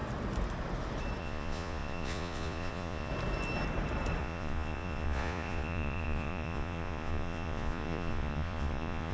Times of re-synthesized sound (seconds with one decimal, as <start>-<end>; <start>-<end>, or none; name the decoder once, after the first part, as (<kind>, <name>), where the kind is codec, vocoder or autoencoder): 1.2-3.1 (vocoder, Vocos); 4.2-9.1